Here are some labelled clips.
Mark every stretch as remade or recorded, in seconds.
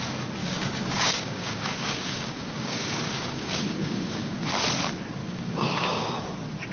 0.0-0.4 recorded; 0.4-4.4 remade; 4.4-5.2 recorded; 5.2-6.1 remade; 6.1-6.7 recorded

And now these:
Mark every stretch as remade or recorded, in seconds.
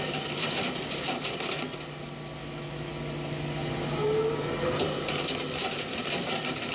0.0-2.4 recorded; 2.4-2.9 remade; 2.9-6.7 recorded